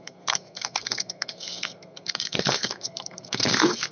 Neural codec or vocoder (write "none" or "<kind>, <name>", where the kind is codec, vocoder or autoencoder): codec, SNAC